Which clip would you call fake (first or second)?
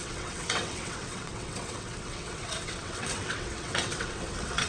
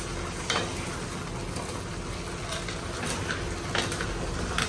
first